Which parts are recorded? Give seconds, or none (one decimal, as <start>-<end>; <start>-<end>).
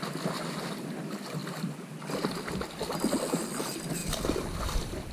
0.0-5.1